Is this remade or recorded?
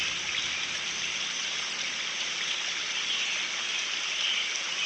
recorded